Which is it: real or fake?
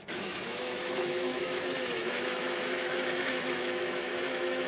fake